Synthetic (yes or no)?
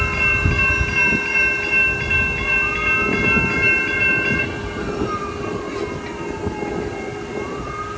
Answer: no